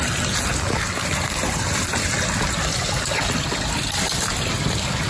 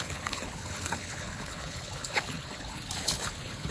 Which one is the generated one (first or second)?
second